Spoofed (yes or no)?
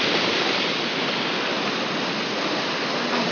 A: no